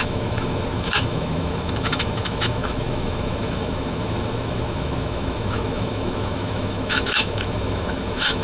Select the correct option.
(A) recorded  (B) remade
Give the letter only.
B